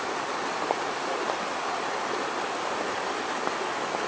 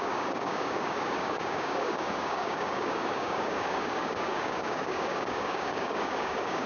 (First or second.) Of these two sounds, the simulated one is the second